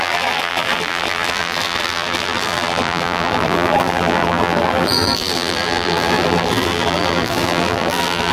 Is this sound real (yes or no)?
no